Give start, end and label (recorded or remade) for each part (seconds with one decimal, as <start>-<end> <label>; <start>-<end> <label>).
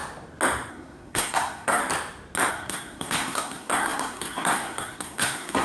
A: 0.0-0.7 recorded; 0.7-1.8 remade; 1.8-2.5 recorded; 2.5-5.6 remade